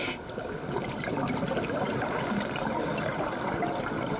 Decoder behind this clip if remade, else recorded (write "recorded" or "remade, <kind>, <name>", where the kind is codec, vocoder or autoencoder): recorded